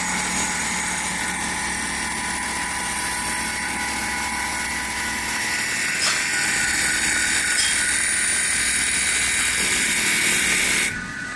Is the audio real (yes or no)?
yes